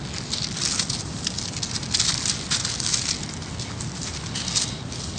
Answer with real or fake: real